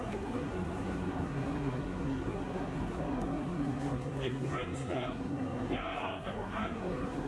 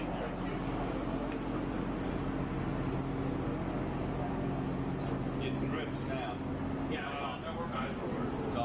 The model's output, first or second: first